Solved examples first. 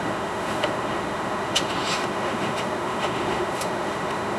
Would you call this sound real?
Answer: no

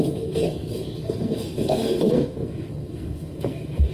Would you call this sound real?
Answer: no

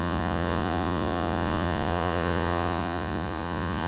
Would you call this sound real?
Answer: no